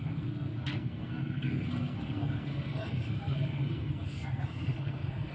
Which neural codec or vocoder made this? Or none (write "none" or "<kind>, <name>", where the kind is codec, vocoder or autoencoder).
codec, SNAC